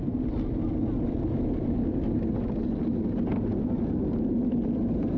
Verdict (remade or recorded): recorded